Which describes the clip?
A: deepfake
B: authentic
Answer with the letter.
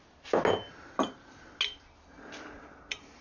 B